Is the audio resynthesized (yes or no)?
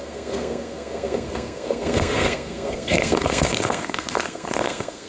yes